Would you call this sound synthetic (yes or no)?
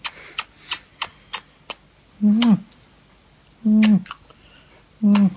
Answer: no